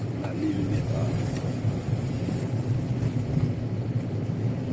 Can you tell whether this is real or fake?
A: real